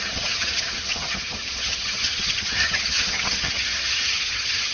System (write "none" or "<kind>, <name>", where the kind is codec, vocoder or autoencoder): vocoder, HiFi-GAN